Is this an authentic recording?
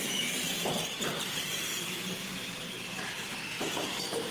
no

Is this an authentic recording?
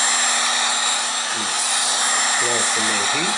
yes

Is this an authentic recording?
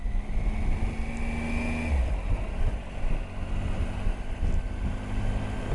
yes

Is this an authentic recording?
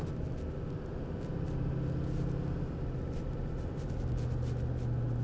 yes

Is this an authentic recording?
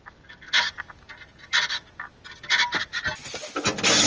yes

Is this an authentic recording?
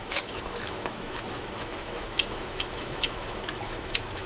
no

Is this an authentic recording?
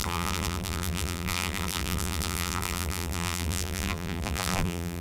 no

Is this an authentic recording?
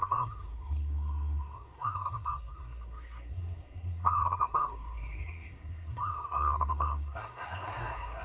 no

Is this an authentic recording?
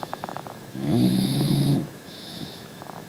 no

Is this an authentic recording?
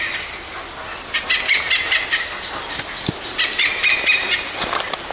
yes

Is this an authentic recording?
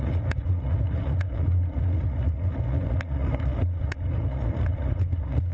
no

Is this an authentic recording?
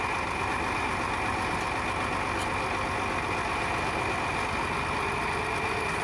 yes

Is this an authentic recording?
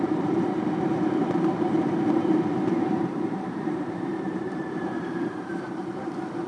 no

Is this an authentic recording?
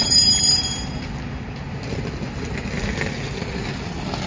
yes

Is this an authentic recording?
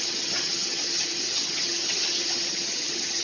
no